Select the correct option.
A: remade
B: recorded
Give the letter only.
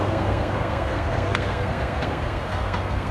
A